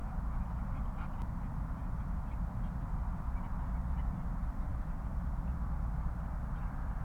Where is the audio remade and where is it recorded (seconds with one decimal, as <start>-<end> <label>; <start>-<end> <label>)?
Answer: 0.0-7.0 recorded